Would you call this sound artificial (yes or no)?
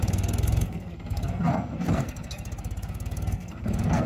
yes